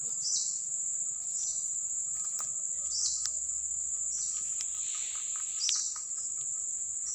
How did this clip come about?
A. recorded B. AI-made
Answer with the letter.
A